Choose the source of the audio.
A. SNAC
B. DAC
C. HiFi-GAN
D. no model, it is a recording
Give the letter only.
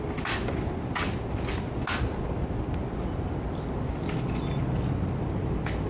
D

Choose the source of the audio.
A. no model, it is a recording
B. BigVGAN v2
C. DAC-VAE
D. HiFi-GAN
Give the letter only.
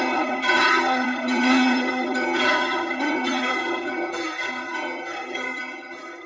D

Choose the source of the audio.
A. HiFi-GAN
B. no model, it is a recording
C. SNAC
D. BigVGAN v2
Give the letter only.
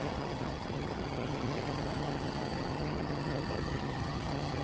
A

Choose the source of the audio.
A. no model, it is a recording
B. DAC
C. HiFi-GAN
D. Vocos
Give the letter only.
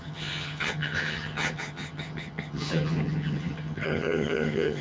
C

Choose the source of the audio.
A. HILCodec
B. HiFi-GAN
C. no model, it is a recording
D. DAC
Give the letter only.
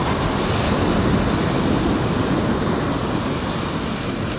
C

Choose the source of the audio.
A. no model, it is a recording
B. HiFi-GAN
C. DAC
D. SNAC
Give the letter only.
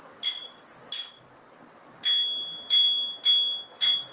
A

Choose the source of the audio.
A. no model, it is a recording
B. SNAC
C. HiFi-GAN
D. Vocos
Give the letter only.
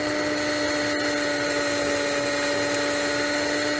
A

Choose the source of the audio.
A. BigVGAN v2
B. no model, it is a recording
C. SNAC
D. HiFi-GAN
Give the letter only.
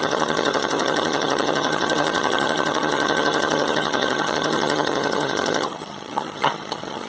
D